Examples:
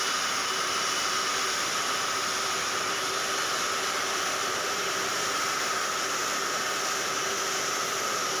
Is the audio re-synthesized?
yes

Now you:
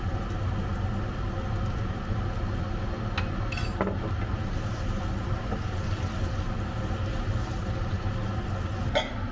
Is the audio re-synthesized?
no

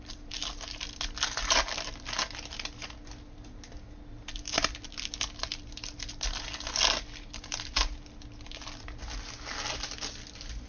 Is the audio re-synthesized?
no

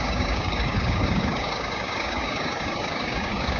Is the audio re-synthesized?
yes